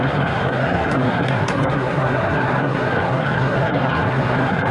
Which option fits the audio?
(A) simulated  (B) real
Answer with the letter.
A